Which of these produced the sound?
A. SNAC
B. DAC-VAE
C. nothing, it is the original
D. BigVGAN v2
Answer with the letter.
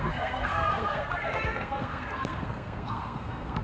A